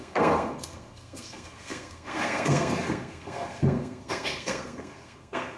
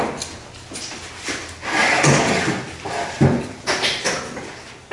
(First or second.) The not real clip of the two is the first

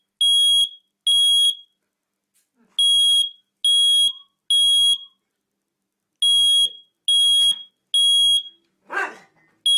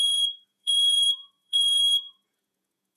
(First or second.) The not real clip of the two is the second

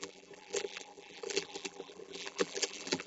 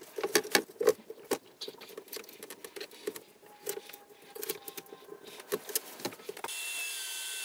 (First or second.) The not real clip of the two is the first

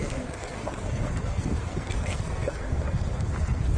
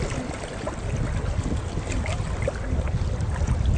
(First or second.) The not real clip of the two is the first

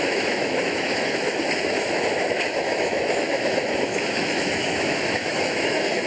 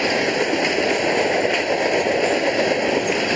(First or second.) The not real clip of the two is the first